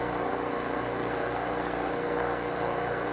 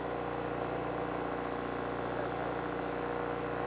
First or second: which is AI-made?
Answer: first